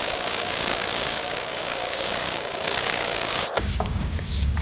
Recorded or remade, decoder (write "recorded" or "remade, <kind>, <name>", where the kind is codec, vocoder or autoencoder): remade, codec, DAC